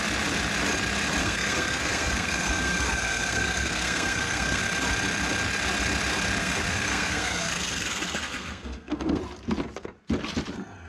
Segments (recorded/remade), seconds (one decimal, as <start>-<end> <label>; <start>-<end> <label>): 0.0-1.2 recorded; 1.2-4.6 remade; 4.6-6.4 recorded; 6.4-9.2 remade; 9.2-10.9 recorded